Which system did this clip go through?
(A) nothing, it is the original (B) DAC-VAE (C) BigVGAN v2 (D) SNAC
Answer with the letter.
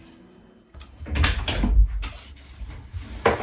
A